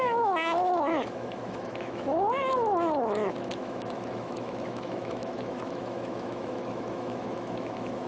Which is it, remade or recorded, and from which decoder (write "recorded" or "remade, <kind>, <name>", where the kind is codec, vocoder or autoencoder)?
remade, autoencoder, DAC-VAE